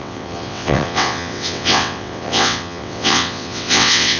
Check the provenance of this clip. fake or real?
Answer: fake